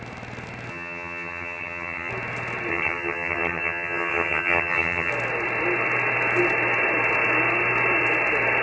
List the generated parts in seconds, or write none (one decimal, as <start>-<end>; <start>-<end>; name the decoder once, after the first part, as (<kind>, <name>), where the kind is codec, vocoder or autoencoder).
0.7-2.1 (vocoder, HiFi-GAN); 2.7-5.1